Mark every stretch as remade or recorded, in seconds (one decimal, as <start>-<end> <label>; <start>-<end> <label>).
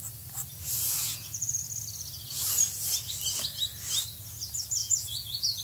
0.0-1.0 recorded; 1.0-1.5 remade; 1.5-4.8 recorded; 4.8-5.6 remade